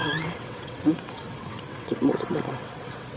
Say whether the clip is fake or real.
fake